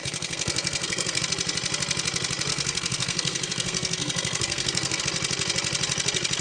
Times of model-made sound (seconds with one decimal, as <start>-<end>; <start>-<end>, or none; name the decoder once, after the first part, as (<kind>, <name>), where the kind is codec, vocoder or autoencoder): 0.0-1.2 (codec, SNAC); 2.5-5.0